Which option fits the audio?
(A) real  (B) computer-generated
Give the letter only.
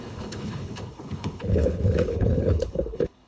B